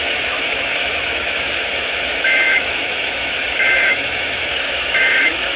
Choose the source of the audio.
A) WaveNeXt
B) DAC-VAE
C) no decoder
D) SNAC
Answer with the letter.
B